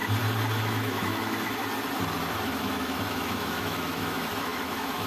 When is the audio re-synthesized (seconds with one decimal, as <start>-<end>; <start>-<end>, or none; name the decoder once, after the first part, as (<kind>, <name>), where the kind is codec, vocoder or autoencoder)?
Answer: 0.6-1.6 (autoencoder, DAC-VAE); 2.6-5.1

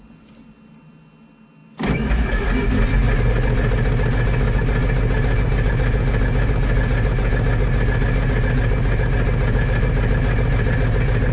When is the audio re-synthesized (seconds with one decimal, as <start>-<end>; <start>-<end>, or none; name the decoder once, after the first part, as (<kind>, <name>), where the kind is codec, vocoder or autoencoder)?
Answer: none

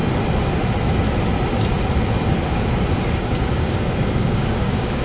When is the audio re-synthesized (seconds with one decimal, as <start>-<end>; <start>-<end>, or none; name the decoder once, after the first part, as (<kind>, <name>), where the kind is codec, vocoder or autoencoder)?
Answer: 2.5-5.0 (codec, DAC)

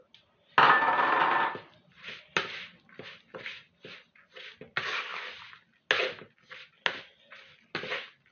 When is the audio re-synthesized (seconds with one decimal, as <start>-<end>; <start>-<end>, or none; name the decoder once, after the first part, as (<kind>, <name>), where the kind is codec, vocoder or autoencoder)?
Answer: none

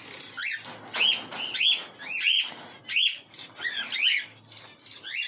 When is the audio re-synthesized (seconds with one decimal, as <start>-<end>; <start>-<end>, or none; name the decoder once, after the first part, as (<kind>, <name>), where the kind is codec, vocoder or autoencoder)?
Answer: none

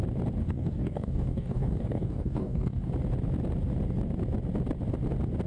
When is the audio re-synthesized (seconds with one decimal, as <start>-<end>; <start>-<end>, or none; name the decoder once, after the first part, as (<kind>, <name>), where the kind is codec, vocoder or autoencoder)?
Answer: 0.4-2.9 (codec, DAC)

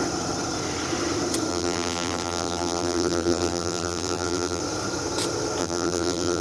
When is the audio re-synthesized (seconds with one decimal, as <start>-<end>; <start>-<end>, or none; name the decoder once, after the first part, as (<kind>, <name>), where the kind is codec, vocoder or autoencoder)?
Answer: 1.5-4.6 (vocoder, BigVGAN v2); 5.6-6.4